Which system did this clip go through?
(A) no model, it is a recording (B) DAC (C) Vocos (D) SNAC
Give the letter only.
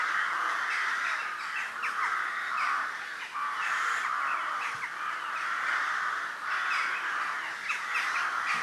A